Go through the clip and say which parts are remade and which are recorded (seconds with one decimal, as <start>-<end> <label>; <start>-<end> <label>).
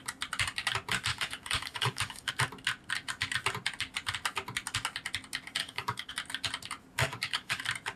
0.0-1.1 recorded; 1.1-2.3 remade; 2.3-5.6 recorded; 5.6-6.1 remade; 6.1-7.0 recorded; 7.0-7.6 remade; 7.6-8.0 recorded